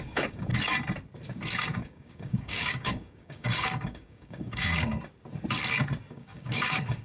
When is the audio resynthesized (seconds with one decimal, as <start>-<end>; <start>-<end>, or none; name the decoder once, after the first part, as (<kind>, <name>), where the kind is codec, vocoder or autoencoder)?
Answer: 0.0-0.5 (codec, DAC); 1.6-4.9; 6.1-7.0